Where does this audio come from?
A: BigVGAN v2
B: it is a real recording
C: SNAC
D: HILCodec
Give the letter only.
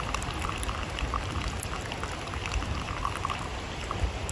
B